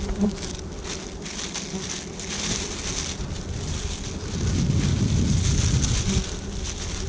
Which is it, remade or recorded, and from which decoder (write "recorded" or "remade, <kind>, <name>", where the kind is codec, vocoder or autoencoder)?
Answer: recorded